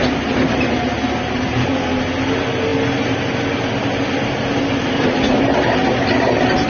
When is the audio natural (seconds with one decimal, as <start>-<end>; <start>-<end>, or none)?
0.0-6.7